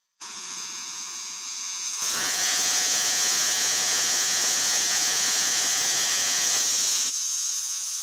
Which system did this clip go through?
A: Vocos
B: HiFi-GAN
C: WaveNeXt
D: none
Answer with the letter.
A